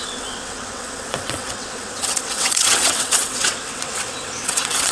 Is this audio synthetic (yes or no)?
yes